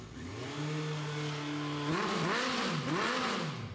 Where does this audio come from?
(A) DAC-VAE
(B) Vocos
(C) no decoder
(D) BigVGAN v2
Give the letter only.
C